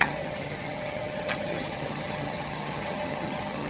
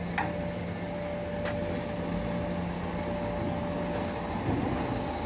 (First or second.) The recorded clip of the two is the second